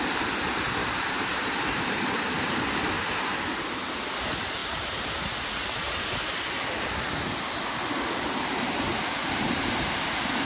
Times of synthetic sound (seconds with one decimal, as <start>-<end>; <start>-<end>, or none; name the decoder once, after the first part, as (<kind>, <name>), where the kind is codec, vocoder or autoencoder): 0.8-2.9 (vocoder, BigVGAN v2); 9.2-10.4